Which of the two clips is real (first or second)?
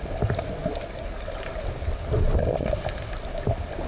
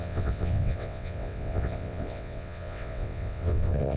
first